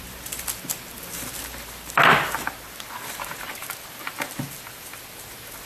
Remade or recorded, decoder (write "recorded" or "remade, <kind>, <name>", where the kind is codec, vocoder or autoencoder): recorded